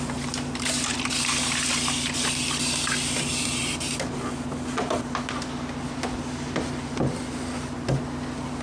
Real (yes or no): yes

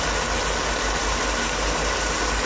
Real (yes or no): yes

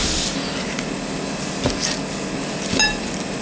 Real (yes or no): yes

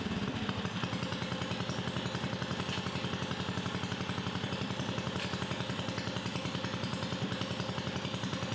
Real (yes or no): yes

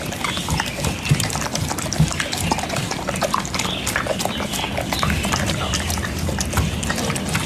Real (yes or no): yes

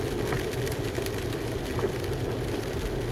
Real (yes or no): yes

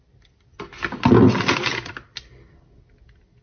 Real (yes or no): yes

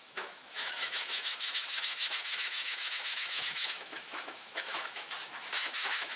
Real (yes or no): no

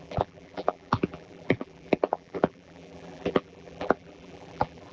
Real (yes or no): no